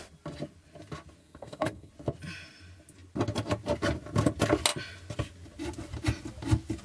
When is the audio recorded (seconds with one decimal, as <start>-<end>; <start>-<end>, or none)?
0.0-1.2; 1.9-6.8